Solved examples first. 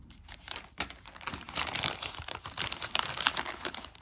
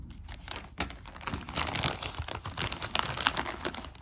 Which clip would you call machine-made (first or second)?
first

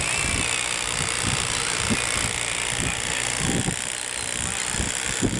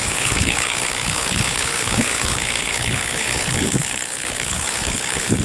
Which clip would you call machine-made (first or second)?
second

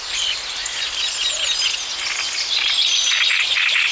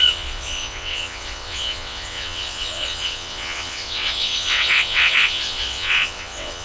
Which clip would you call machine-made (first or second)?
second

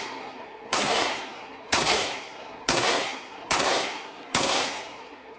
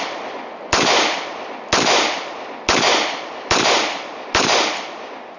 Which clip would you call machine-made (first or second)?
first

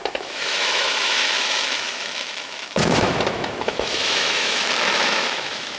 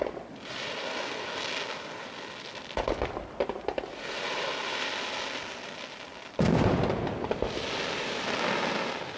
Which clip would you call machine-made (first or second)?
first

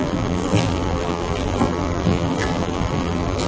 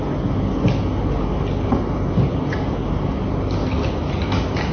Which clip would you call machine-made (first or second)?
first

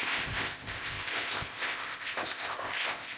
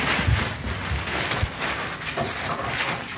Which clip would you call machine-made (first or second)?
first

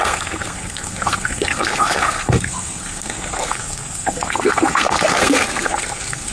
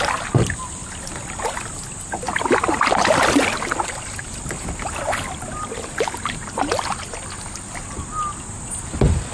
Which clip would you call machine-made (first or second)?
first